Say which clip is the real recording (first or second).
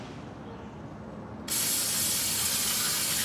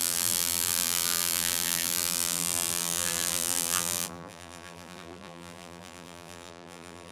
first